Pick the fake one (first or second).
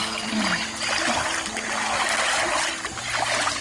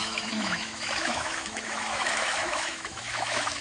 second